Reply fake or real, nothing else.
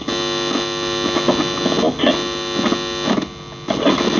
real